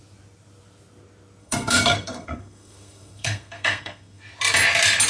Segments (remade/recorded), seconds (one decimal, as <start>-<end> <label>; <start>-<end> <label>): 0.0-1.4 recorded; 1.4-4.2 remade; 4.2-5.1 recorded